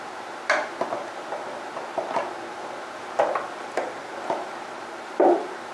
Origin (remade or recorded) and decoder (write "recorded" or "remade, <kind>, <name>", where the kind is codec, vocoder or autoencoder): recorded